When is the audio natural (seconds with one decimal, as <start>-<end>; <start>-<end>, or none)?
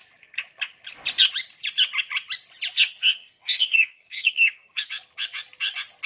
0.0-2.7; 4.9-6.1